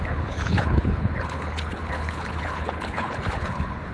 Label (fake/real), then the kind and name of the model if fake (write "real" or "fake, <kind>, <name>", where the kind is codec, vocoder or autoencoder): fake, codec, HILCodec